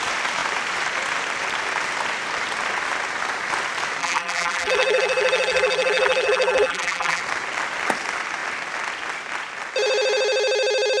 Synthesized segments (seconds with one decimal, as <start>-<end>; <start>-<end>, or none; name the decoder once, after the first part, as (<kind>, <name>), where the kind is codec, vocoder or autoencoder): 4.0-7.2 (vocoder, BigVGAN v2)